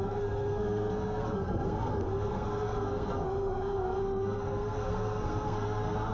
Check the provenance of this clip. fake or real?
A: fake